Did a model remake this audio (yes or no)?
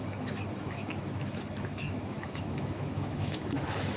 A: yes